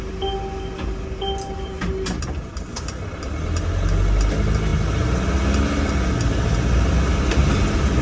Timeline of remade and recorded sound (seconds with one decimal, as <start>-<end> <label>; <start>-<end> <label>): 0.0-8.0 recorded